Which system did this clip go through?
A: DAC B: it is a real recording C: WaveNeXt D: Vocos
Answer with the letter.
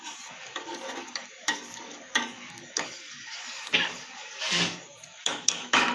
A